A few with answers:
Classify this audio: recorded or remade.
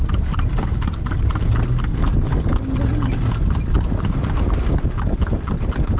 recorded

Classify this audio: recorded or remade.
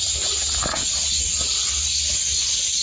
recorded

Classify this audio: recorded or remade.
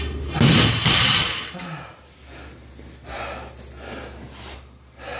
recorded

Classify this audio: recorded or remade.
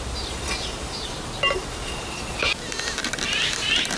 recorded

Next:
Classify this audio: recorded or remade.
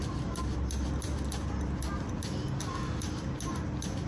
recorded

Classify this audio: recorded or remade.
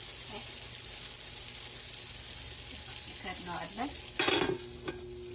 recorded